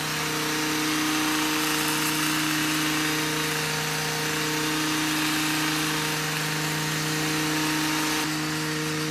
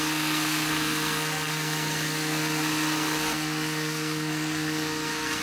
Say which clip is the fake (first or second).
second